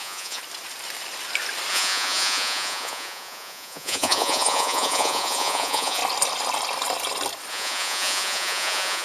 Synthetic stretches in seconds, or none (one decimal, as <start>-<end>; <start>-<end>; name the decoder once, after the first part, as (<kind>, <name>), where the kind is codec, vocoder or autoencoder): 0.0-0.4 (vocoder, Vocos); 1.7-6.0; 7.5-9.0